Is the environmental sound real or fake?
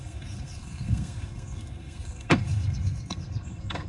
fake